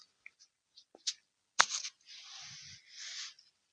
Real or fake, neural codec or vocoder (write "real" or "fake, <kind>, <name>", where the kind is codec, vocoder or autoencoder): real